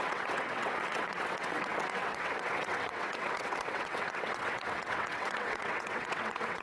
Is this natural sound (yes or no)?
no